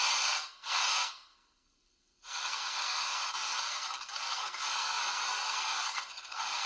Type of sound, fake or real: fake